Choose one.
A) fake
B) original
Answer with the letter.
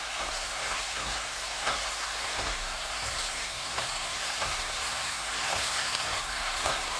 A